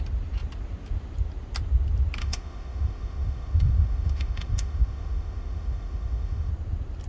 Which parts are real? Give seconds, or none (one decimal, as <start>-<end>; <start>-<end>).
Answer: 0.0-2.2; 6.5-7.1